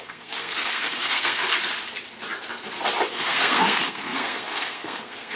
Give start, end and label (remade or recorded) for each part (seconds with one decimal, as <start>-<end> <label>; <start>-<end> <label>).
0.0-1.4 remade; 1.4-3.1 recorded; 3.1-5.3 remade